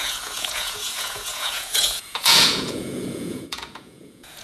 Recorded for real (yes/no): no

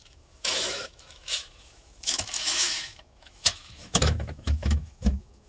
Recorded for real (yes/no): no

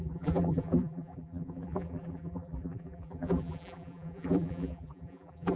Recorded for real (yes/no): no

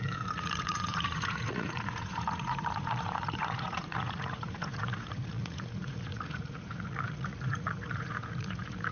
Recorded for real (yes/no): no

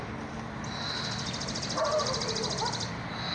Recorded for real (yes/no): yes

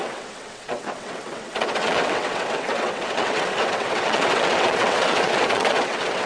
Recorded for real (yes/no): no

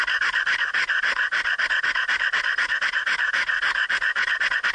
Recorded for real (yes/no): yes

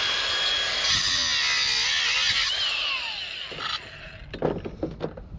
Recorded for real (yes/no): yes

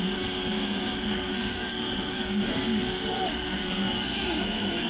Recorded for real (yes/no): no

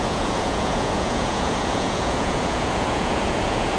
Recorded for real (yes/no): no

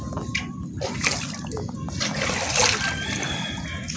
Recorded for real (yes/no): yes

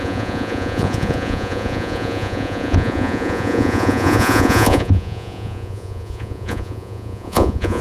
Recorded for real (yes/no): no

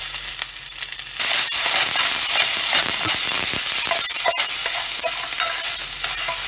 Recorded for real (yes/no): yes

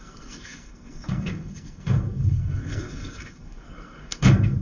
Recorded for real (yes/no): no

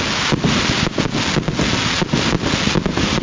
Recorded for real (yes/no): yes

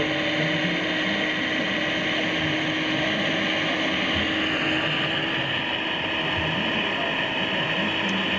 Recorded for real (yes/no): yes